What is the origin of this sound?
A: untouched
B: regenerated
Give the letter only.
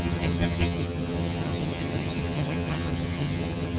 B